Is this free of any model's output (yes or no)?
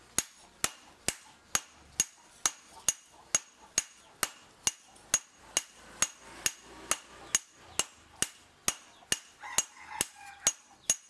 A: yes